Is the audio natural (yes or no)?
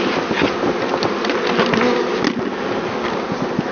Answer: yes